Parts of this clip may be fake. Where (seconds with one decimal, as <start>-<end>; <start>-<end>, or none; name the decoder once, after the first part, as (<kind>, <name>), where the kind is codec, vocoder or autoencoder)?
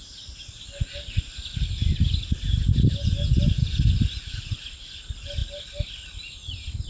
none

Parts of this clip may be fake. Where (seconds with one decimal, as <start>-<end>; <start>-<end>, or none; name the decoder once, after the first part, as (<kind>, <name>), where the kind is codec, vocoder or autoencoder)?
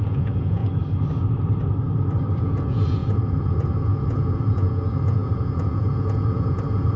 0.0-0.6 (vocoder, Vocos); 2.4-7.0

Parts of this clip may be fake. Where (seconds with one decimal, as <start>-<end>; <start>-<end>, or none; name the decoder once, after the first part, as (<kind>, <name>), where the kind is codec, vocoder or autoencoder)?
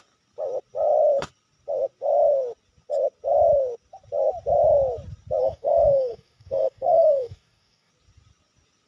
5.4-7.9 (codec, DAC)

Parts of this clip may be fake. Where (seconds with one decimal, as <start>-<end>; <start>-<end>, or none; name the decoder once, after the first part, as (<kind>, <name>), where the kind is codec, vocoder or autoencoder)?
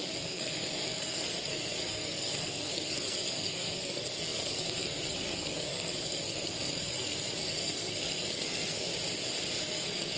0.0-8.9 (codec, SNAC); 9.6-10.2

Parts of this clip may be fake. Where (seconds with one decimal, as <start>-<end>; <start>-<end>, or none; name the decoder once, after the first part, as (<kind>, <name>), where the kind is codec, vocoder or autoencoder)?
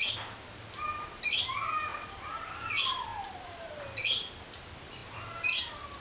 1.9-2.6 (vocoder, BigVGAN v2); 3.1-3.8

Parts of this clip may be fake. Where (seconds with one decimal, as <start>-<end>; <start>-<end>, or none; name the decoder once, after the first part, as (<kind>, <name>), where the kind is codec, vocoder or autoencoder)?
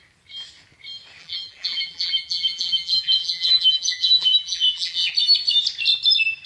1.2-5.1 (vocoder, BigVGAN v2)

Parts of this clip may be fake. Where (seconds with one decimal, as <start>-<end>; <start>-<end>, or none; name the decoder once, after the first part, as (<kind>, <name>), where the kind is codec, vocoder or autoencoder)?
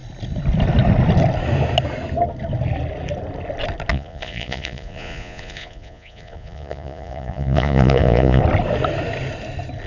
3.9-8.4 (vocoder, Vocos)